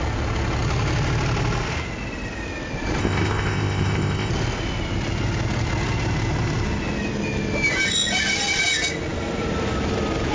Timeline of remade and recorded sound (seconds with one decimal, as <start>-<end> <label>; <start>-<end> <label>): 0.0-3.0 recorded; 3.0-4.3 remade; 4.3-10.3 recorded